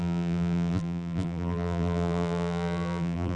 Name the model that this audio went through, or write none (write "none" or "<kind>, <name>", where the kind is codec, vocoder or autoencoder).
vocoder, BigVGAN v2